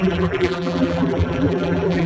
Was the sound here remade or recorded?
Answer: remade